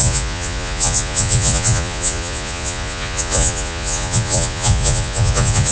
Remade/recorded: remade